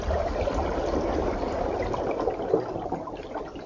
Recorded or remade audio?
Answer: recorded